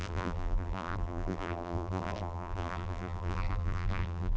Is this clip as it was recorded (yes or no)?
no